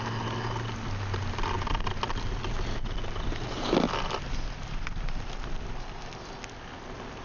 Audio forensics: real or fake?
real